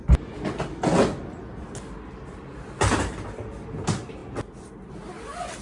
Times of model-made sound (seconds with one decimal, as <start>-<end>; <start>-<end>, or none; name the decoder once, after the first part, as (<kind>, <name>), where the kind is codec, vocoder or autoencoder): none

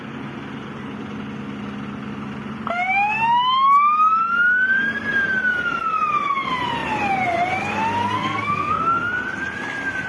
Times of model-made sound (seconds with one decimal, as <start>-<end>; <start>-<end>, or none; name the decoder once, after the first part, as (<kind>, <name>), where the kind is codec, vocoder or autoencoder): 8.0-8.8 (codec, SNAC)

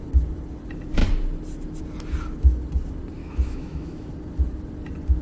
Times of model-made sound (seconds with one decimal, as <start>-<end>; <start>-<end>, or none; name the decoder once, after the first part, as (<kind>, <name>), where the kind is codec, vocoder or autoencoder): 3.2-4.1 (autoencoder, DAC-VAE)

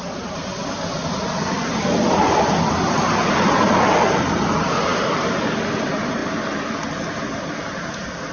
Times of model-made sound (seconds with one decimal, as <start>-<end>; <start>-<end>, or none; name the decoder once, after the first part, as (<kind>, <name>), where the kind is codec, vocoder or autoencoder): 0.6-1.3 (vocoder, BigVGAN v2); 4.9-5.5

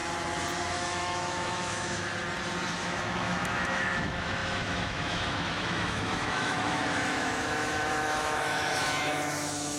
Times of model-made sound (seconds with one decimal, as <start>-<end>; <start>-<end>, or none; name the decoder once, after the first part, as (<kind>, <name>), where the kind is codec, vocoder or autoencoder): 0.7-2.1 (autoencoder, DAC-VAE); 2.7-9.8

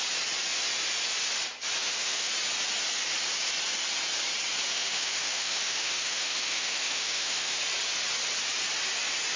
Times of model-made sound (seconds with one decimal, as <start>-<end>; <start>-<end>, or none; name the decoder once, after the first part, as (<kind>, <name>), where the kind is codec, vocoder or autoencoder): 1.8-2.3 (autoencoder, DAC-VAE); 4.7-7.6

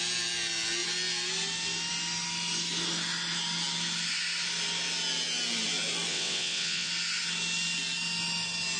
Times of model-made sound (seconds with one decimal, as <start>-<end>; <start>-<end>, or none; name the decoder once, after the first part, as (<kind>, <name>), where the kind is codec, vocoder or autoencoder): 6.1-6.9 (vocoder, WaveNeXt)